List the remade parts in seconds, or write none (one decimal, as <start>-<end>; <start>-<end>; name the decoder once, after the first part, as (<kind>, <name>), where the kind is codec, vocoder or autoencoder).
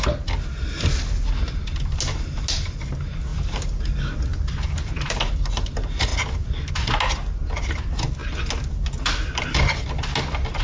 4.3-5.3 (vocoder, BigVGAN v2)